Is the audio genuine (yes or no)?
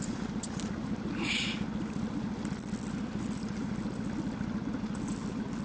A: yes